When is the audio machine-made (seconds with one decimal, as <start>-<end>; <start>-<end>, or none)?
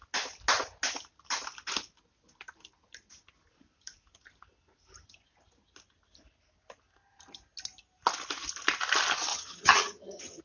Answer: 9.3-10.4